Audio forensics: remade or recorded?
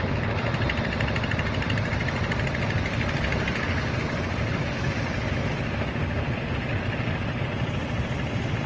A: recorded